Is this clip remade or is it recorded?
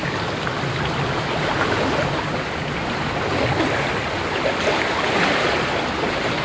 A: recorded